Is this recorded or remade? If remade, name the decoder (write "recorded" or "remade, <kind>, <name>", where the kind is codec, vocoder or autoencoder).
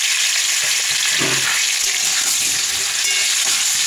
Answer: recorded